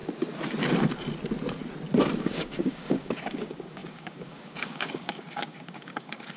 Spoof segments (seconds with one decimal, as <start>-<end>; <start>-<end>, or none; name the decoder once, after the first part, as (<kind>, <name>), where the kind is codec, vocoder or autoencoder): 2.2-6.4 (codec, DAC)